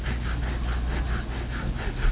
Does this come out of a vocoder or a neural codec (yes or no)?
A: no